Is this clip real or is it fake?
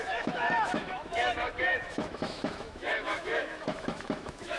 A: fake